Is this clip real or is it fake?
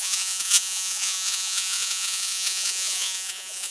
fake